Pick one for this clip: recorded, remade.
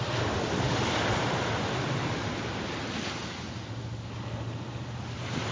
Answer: recorded